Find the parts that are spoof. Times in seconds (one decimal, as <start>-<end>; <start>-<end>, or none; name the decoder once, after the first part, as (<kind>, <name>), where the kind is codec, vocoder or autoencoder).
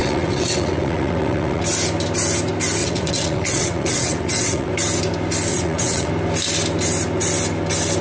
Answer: 0.0-1.6 (vocoder, WaveNeXt); 2.8-4.7; 5.5-6.1